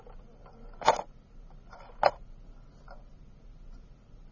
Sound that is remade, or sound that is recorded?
recorded